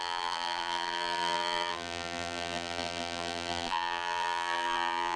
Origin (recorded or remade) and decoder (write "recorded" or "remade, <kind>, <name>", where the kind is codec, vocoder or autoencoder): remade, vocoder, BigVGAN v2